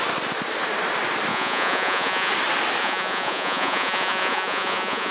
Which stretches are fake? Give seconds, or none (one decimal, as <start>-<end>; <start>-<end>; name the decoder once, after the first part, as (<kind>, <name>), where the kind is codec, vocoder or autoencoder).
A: 1.3-2.3 (vocoder, Vocos); 2.8-5.1